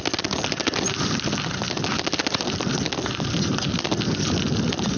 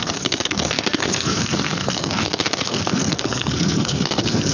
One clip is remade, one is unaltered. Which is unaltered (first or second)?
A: first